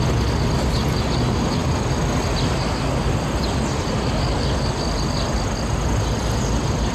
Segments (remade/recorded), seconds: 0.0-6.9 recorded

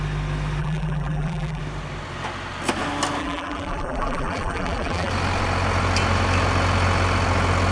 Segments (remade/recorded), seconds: 0.0-0.6 recorded; 0.6-1.6 remade; 1.6-3.2 recorded; 3.2-5.1 remade; 5.1-7.7 recorded

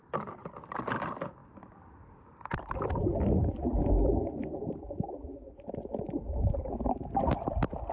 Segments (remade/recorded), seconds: 0.0-7.9 remade

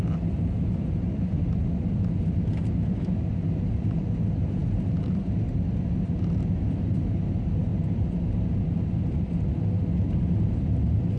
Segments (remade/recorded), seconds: 0.0-4.6 recorded; 4.6-5.5 remade; 5.5-7.7 recorded; 7.7-11.2 remade

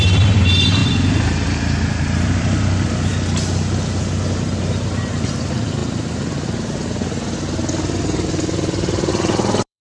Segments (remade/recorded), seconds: 0.0-3.1 remade; 3.1-4.6 recorded; 4.6-5.8 remade; 5.8-9.1 recorded; 9.1-9.8 remade

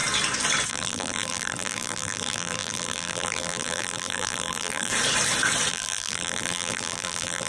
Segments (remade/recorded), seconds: 0.0-0.7 recorded; 0.7-4.9 remade; 4.9-5.7 recorded; 5.7-7.5 remade

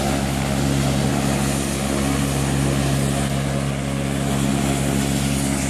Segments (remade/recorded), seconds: 0.0-5.7 recorded

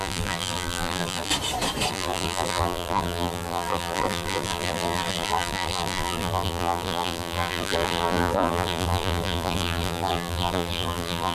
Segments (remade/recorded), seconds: 0.0-1.3 remade; 1.3-1.9 recorded; 1.9-11.3 remade